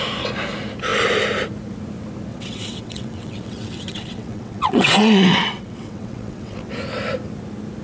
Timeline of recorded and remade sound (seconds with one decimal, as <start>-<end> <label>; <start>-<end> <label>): 0.0-2.3 recorded; 2.3-6.7 remade; 6.7-7.8 recorded